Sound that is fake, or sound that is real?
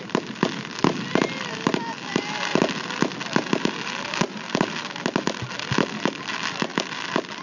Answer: real